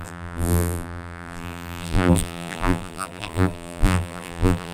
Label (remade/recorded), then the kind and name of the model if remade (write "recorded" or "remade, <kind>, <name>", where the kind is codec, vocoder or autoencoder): remade, vocoder, BigVGAN v2